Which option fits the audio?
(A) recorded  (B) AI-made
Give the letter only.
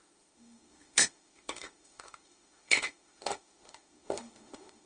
B